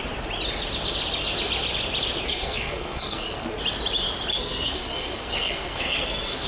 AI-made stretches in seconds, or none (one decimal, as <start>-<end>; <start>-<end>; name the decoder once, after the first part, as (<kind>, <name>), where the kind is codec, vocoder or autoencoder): 2.3-3.6 (codec, SNAC); 4.3-6.5